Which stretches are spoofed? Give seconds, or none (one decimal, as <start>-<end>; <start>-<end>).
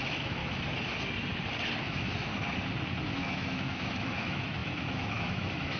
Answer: 0.0-0.4; 1.8-2.3; 3.0-5.8